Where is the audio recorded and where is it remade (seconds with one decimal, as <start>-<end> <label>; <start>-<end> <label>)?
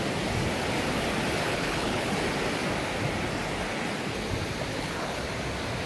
0.0-1.4 recorded; 1.4-2.2 remade; 2.2-4.7 recorded; 4.7-5.2 remade; 5.2-5.9 recorded